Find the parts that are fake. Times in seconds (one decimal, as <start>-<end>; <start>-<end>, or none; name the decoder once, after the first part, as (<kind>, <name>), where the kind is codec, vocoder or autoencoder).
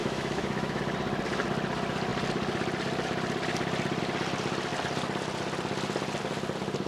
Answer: 0.0-0.8 (autoencoder, DAC-VAE)